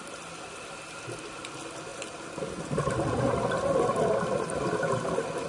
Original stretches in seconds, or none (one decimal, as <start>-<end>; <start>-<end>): 0.0-5.5